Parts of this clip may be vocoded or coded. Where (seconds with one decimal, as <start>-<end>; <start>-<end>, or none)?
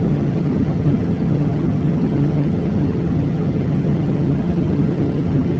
0.0-5.6